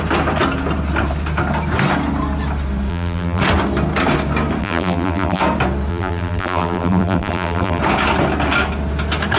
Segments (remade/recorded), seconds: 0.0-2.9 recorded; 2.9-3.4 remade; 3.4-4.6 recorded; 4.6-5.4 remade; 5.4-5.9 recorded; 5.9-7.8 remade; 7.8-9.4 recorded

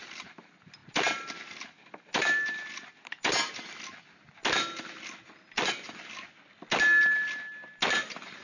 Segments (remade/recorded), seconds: 0.0-8.4 recorded

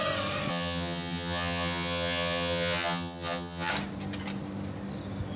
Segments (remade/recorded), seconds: 0.0-0.5 recorded; 0.5-3.7 remade; 3.7-5.4 recorded

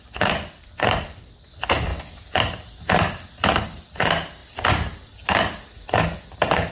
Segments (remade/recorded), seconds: 0.0-6.7 recorded

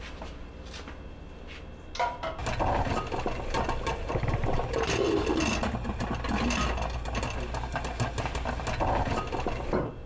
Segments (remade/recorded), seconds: 0.0-10.1 recorded

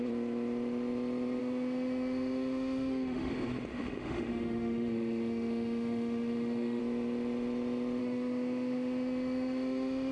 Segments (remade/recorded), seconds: 0.0-1.4 recorded; 1.4-3.3 remade; 3.3-3.7 recorded; 3.7-6.8 remade; 6.8-8.0 recorded; 8.0-10.1 remade